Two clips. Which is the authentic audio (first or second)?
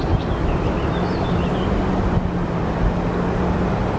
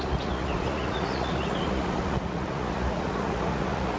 first